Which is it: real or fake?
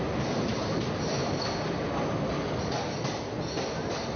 real